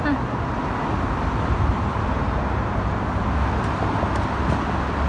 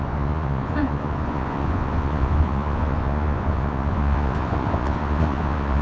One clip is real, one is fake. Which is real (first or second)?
first